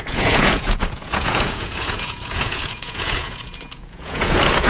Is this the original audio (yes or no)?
no